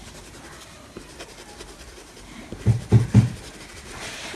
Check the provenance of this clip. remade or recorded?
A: recorded